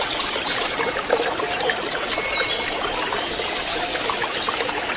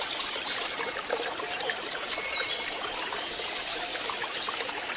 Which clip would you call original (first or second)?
first